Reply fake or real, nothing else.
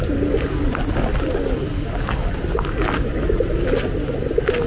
real